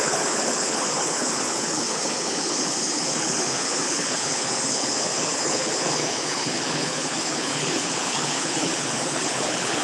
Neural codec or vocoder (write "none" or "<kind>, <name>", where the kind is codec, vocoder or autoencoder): codec, HILCodec